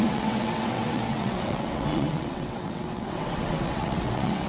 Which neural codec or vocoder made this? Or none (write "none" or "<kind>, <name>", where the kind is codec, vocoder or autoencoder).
vocoder, WaveNeXt